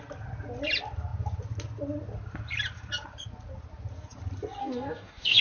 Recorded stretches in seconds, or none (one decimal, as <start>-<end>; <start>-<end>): 0.0-4.6